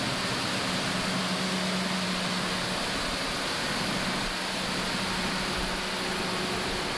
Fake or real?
real